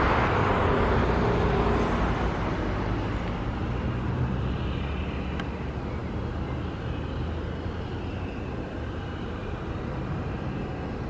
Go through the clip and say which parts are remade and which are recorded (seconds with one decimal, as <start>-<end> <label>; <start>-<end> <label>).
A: 0.0-11.1 recorded